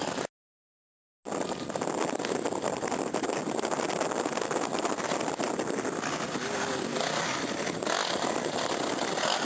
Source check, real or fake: real